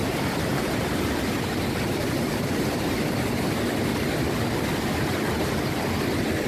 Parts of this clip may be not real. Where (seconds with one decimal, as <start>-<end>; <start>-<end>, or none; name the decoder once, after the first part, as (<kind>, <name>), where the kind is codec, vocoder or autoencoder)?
0.0-3.5 (vocoder, BigVGAN v2)